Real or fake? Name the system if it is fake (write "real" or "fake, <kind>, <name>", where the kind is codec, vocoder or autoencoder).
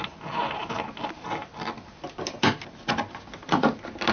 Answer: real